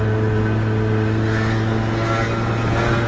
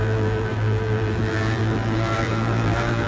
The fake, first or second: second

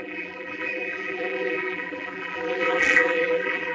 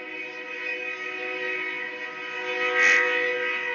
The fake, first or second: first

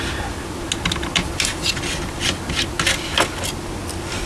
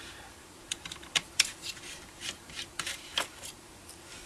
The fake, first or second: second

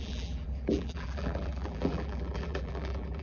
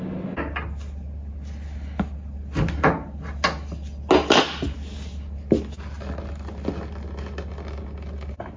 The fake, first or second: first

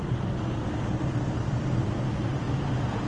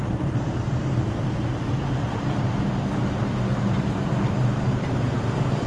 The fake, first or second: second